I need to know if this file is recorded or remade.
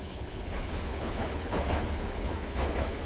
remade